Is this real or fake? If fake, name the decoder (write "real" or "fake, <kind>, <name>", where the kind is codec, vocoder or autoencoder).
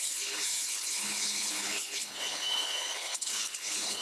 fake, codec, HILCodec